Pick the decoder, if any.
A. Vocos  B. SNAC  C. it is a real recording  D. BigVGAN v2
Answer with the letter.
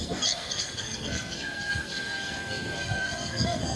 B